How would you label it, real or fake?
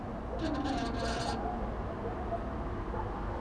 real